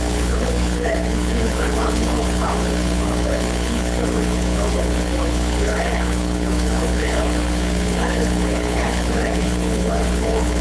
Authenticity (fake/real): fake